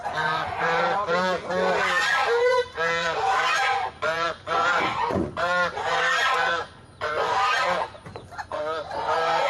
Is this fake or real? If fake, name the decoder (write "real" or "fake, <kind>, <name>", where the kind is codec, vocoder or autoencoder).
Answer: fake, vocoder, Vocos